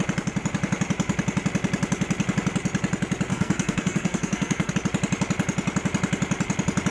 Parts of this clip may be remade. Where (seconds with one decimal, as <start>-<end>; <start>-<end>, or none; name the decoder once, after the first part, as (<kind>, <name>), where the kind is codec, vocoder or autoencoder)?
3.3-4.7 (codec, SNAC)